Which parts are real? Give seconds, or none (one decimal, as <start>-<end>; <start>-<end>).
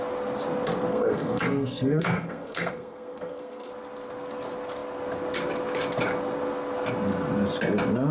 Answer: 0.0-0.9; 3.7-8.1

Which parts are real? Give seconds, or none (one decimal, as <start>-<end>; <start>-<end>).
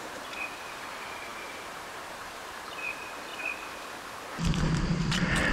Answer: 3.3-5.5